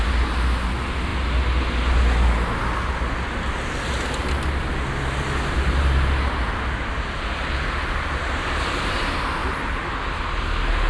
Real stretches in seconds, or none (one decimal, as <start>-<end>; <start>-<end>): 0.0-10.9